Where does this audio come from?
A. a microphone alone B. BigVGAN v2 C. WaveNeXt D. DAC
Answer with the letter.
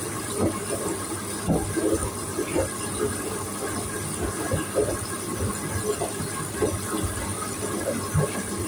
A